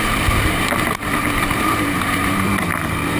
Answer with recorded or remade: remade